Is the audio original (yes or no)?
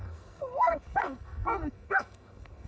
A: no